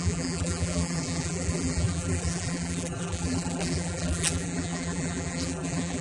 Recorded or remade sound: remade